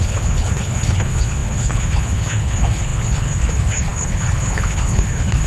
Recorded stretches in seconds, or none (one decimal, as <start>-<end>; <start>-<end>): none